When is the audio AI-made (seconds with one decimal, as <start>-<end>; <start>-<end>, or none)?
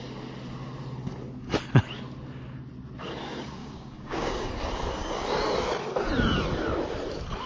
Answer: 3.6-4.5